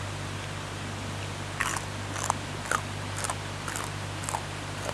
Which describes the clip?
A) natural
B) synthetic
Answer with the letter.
A